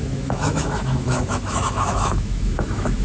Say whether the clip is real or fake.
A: fake